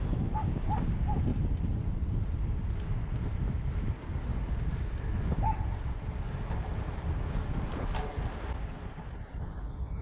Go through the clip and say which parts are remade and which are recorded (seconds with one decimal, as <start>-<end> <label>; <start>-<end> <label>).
0.0-10.0 recorded